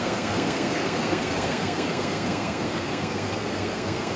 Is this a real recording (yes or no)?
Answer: no